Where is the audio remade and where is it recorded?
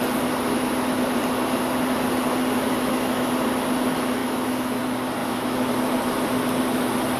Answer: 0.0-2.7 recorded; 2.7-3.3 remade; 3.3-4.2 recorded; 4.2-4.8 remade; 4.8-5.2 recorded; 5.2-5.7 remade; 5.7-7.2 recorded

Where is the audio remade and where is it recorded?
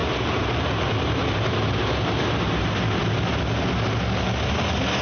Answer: 0.0-3.0 remade; 3.0-5.0 recorded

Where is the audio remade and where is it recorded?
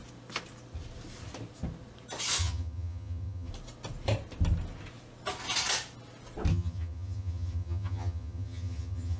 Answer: 0.0-2.4 recorded; 2.4-3.5 remade; 3.5-6.5 recorded; 6.5-9.2 remade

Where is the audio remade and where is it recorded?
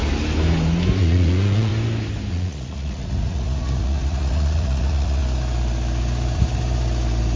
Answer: 0.0-1.0 recorded; 1.0-1.7 remade; 1.7-2.3 recorded; 2.3-5.2 remade; 5.2-7.4 recorded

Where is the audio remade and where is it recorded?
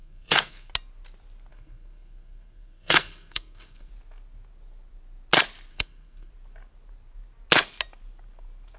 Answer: 0.0-0.7 remade; 0.7-1.5 recorded; 1.5-3.9 remade; 3.9-5.7 recorded; 5.7-6.3 remade; 6.3-8.8 recorded